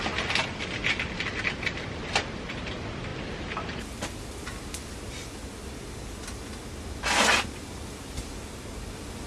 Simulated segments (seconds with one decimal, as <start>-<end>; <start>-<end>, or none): none